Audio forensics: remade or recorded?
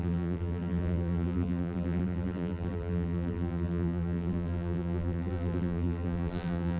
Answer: remade